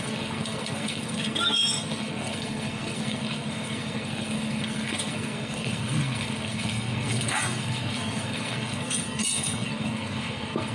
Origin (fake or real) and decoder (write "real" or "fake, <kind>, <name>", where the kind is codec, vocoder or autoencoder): fake, codec, SNAC